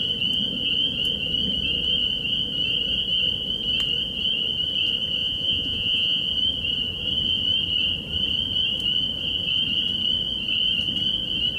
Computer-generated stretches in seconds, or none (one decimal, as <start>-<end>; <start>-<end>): 5.2-6.2